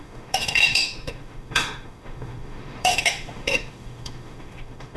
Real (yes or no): no